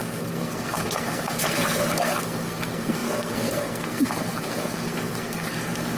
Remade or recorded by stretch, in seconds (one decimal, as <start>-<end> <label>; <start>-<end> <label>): 0.0-6.0 remade